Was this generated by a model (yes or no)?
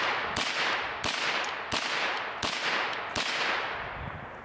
no